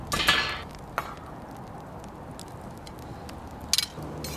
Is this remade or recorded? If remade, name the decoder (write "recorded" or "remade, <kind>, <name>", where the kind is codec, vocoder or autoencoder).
recorded